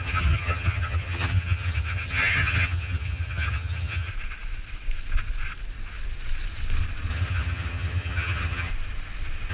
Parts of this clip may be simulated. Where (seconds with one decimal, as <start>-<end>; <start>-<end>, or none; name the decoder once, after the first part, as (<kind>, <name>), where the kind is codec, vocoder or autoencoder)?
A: 0.0-4.1 (vocoder, HiFi-GAN); 7.1-8.7